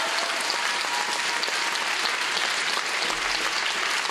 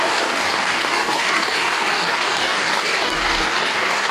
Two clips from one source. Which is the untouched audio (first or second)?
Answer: first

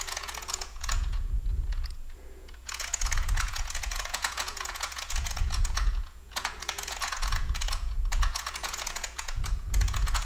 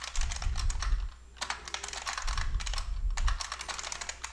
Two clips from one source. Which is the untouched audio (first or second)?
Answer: second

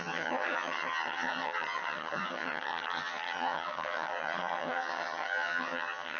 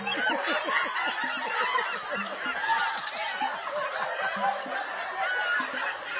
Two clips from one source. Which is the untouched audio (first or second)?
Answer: second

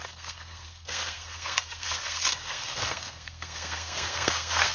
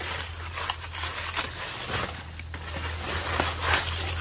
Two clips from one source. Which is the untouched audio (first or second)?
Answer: second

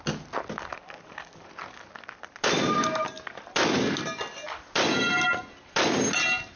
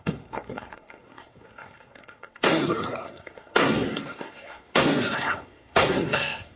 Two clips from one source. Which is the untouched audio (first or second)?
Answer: first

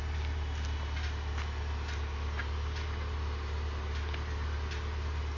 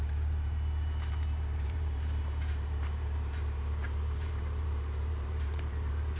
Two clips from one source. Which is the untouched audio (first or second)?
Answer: first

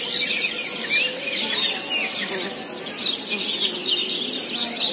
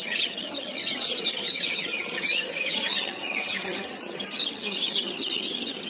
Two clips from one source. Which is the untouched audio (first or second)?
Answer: first